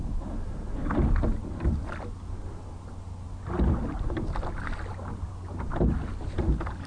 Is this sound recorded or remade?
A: recorded